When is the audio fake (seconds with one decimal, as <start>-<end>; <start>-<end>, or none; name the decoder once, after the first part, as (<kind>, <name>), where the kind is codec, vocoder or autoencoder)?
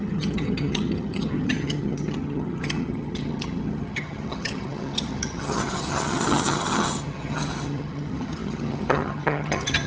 0.0-9.9 (vocoder, HiFi-GAN)